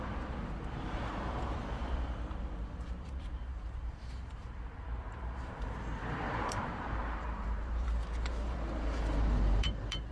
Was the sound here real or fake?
fake